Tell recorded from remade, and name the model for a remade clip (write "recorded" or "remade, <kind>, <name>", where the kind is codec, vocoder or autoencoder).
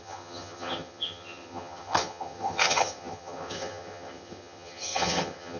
remade, vocoder, HiFi-GAN